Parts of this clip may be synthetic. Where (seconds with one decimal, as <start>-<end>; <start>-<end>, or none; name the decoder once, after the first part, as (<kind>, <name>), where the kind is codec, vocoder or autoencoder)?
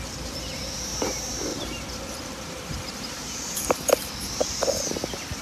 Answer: 1.5-4.7 (vocoder, BigVGAN v2)